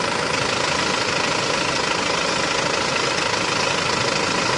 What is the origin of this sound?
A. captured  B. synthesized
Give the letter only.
A